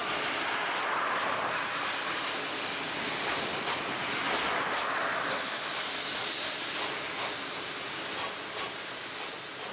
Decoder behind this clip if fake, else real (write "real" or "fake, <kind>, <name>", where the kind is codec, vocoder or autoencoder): real